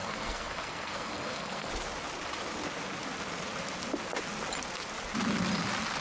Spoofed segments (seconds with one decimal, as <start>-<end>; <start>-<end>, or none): 0.0-1.7